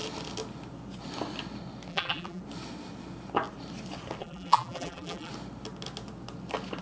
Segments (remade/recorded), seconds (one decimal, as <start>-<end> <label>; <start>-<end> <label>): 0.0-1.9 recorded; 1.9-2.4 remade; 2.4-4.2 recorded; 4.2-5.3 remade; 5.3-6.8 recorded